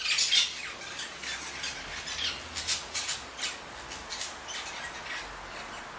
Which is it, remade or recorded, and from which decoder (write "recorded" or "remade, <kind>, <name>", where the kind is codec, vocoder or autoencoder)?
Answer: recorded